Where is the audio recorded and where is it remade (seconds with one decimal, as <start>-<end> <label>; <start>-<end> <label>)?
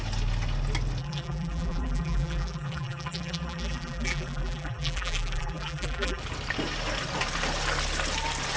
0.0-1.0 recorded; 1.0-6.2 remade; 6.2-8.6 recorded